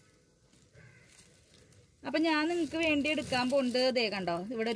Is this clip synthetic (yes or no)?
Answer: no